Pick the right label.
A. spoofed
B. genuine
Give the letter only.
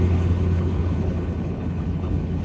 A